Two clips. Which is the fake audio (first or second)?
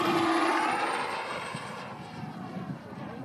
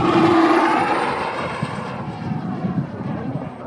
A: second